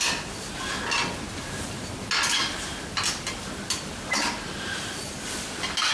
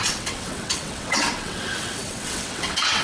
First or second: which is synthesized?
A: second